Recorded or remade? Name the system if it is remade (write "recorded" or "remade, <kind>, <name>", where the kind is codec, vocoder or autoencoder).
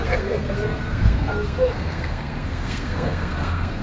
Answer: remade, codec, SNAC